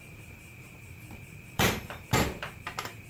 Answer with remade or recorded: remade